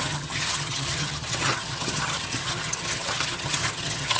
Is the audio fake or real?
fake